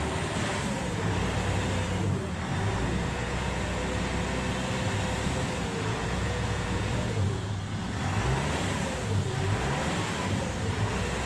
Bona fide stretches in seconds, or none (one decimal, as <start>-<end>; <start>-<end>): 0.0-2.9; 3.8-5.7; 7.5-11.3